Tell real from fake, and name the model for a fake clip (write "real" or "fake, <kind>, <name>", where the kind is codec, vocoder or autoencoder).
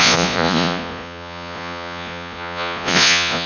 fake, vocoder, Vocos